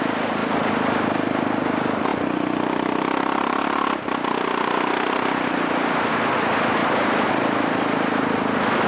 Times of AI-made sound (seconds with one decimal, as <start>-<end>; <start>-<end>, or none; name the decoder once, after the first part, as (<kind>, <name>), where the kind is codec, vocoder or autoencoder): 2.1-3.9 (vocoder, BigVGAN v2); 6.8-7.6